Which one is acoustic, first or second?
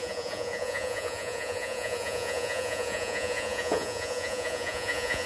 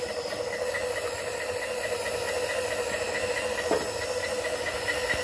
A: second